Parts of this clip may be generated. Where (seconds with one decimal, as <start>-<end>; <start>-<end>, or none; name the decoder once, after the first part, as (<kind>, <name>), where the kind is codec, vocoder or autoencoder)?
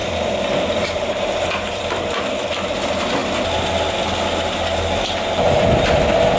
0.0-1.8 (vocoder, BigVGAN v2)